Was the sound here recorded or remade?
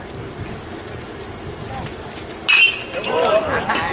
recorded